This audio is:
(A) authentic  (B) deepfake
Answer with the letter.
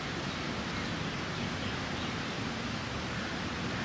A